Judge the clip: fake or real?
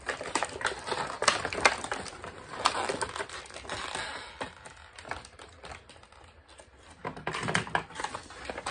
real